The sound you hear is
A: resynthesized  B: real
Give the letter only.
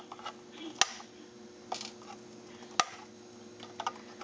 B